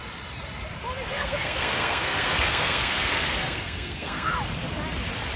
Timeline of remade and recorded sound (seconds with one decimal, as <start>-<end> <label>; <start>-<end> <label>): 0.0-1.1 recorded; 1.1-4.3 remade; 4.3-5.4 recorded